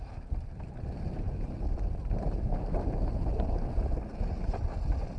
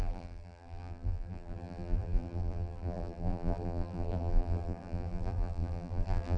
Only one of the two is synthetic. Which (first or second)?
second